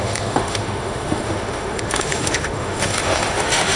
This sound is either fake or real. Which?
fake